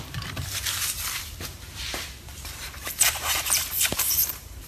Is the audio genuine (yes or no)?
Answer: no